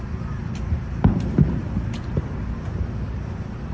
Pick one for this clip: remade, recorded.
recorded